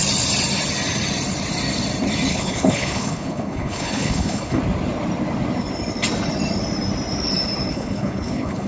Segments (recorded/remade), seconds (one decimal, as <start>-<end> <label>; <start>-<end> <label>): 0.0-2.3 recorded; 2.3-4.6 remade; 4.6-7.7 recorded; 7.7-8.7 remade